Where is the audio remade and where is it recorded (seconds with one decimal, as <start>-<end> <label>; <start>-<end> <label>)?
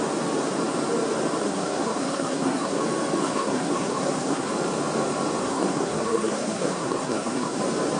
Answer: 0.0-1.4 recorded; 1.4-2.8 remade; 2.8-3.2 recorded; 3.2-4.5 remade; 4.5-5.4 recorded; 5.4-7.6 remade; 7.6-8.0 recorded